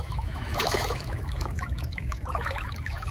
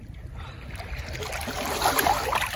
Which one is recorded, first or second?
second